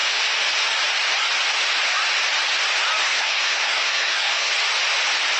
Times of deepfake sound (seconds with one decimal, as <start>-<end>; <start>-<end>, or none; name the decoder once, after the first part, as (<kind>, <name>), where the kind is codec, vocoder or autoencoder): 3.1-4.5 (codec, SNAC)